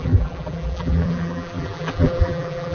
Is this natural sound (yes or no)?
no